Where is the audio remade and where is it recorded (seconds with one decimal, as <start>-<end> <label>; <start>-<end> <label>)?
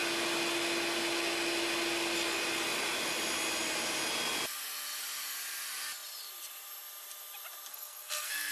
0.0-7.7 recorded; 7.7-8.5 remade